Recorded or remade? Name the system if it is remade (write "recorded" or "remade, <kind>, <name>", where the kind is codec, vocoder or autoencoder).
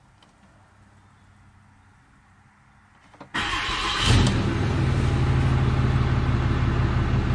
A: recorded